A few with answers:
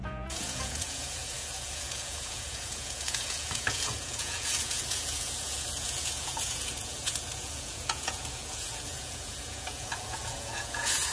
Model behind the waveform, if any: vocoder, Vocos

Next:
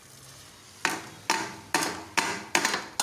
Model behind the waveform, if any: none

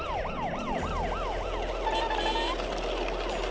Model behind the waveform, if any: none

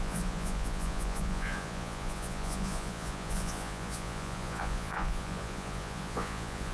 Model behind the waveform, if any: vocoder, Vocos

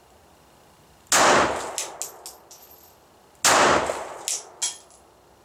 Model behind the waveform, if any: none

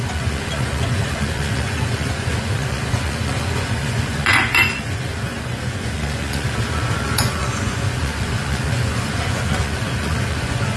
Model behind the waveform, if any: vocoder, Vocos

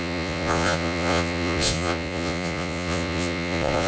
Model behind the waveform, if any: vocoder, Vocos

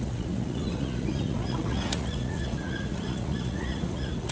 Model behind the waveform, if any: vocoder, Vocos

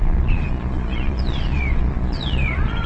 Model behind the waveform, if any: vocoder, Vocos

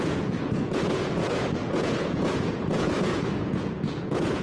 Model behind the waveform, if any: vocoder, Vocos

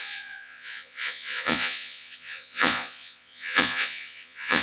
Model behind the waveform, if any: vocoder, Vocos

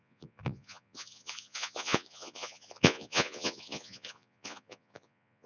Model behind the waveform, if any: vocoder, Vocos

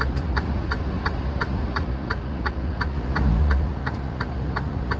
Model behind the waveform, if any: vocoder, Vocos